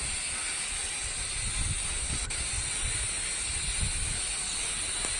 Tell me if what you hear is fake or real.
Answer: real